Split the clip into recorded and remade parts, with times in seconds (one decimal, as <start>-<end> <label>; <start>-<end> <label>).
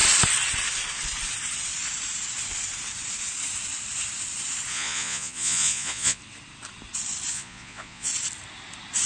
0.0-4.7 recorded; 4.7-6.2 remade; 6.2-7.3 recorded; 7.3-8.1 remade; 8.1-9.1 recorded